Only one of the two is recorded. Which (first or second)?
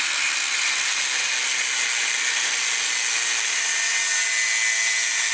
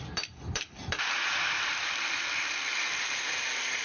first